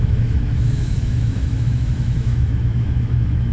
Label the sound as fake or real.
fake